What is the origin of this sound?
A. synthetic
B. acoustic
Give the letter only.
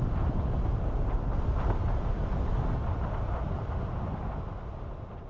B